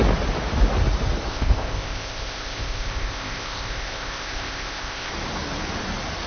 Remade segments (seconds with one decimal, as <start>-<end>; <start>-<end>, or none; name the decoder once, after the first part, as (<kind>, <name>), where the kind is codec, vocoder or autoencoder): 1.3-5.1 (codec, ZipCodec)